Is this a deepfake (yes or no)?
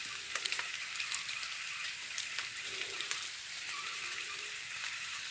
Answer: yes